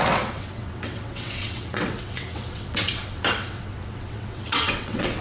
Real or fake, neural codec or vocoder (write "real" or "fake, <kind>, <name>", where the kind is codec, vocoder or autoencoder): fake, vocoder, WaveNeXt